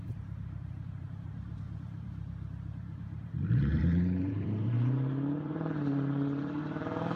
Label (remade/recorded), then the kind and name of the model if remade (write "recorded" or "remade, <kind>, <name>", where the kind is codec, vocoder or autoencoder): remade, vocoder, BigVGAN v2